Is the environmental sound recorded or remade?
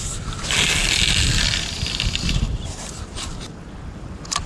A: recorded